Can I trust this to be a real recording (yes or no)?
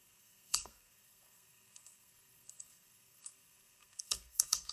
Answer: no